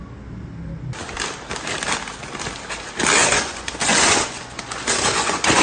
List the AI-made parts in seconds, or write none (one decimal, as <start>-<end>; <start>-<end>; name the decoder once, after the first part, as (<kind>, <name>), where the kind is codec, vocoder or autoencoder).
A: 3.2-5.6 (vocoder, Vocos)